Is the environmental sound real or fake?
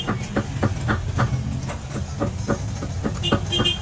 real